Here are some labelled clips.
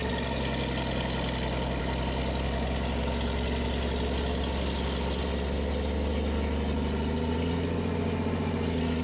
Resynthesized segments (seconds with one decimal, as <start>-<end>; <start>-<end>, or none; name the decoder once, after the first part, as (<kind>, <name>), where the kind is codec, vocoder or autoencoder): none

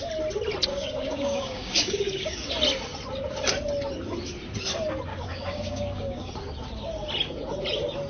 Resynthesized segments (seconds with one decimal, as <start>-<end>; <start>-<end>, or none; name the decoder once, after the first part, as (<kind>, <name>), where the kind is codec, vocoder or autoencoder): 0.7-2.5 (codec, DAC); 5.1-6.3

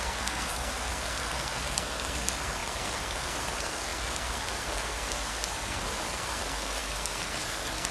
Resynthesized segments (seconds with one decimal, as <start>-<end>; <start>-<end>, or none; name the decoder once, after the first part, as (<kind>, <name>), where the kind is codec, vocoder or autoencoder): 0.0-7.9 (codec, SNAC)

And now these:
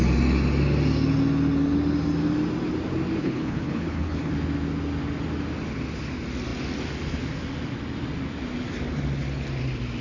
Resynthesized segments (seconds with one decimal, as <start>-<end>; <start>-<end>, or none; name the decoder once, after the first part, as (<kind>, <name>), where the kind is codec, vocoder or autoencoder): 3.2-4.3 (codec, HILCodec)

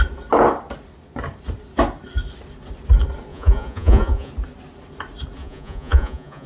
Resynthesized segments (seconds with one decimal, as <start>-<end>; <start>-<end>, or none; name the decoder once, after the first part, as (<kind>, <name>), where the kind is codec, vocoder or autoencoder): 3.3-4.3 (vocoder, Vocos); 5.4-6.5